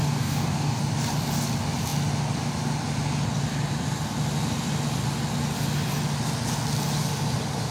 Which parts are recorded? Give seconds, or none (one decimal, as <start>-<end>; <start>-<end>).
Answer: 0.8-7.7